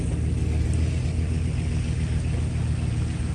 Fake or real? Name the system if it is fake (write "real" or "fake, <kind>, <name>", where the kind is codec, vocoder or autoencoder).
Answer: real